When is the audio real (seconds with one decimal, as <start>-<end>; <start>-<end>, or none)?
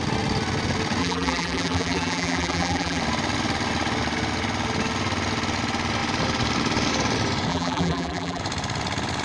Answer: 0.0-1.0; 3.0-7.5; 8.4-9.2